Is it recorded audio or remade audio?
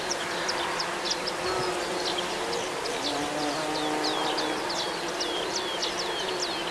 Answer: recorded